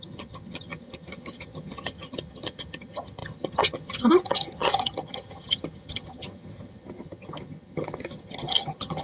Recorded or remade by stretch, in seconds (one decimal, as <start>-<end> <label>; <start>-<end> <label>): 0.0-9.0 remade